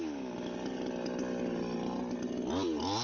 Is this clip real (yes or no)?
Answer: yes